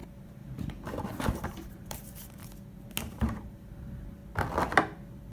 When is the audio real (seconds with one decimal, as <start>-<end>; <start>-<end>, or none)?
0.4-1.2; 2.4-3.1; 4.2-5.3